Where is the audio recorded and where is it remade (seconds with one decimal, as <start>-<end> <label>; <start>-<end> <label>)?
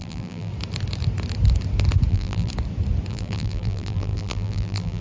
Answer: 0.0-0.5 remade; 0.5-2.1 recorded; 2.1-2.5 remade; 2.5-3.1 recorded; 3.1-5.0 remade